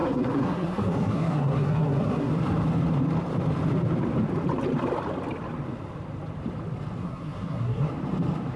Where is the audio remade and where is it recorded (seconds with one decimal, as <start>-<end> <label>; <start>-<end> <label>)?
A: 0.0-2.3 remade; 2.3-7.0 recorded; 7.0-7.9 remade; 7.9-8.6 recorded